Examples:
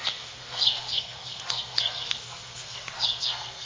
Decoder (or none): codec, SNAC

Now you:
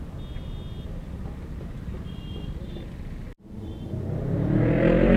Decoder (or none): none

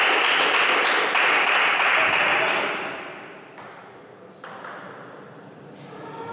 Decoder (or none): none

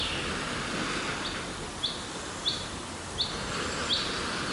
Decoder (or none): none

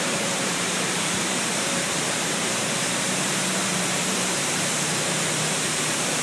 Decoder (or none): vocoder, BigVGAN v2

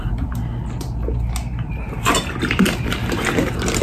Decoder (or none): none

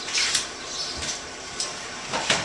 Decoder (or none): vocoder, BigVGAN v2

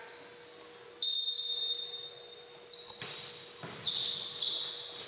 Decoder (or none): none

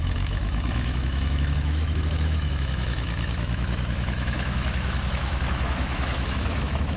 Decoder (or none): autoencoder, DAC-VAE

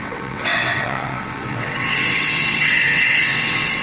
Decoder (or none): vocoder, WaveNeXt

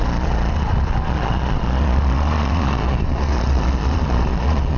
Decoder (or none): vocoder, Vocos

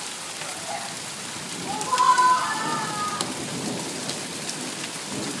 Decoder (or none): none